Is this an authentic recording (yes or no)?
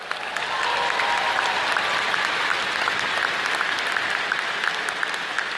yes